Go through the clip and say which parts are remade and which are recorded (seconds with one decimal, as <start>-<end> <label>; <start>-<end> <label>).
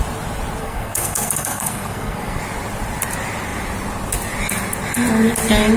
0.0-0.6 recorded; 0.6-2.4 remade; 2.4-5.8 recorded